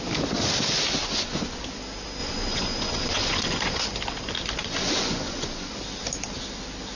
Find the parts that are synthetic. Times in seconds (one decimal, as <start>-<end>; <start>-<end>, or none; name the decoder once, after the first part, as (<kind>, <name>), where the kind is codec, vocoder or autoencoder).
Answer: 1.0-1.6 (vocoder, Vocos); 2.2-3.8; 4.6-5.7